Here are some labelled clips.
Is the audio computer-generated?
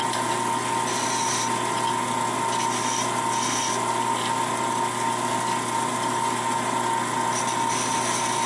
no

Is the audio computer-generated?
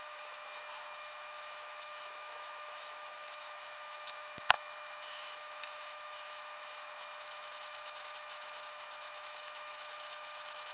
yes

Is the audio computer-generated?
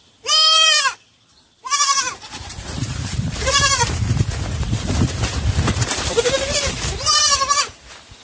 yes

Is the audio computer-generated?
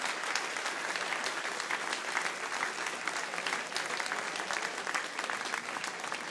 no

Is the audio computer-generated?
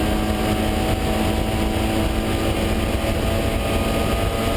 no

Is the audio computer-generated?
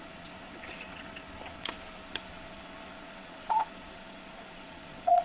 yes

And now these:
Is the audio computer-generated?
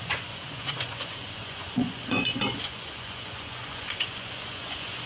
yes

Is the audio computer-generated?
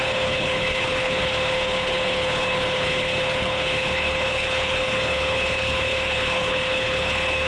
yes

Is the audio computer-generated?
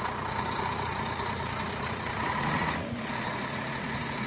yes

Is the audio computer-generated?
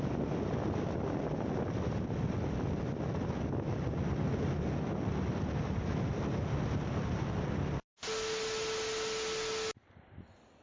no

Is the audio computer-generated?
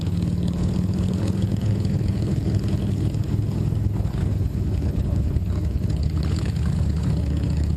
yes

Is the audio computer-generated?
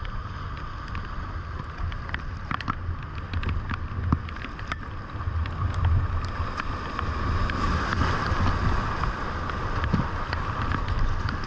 no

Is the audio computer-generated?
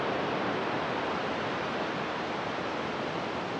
no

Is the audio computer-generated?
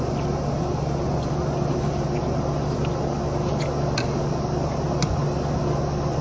no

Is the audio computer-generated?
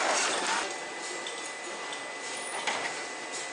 no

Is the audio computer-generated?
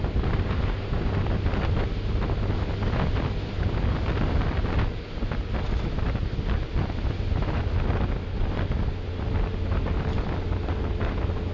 no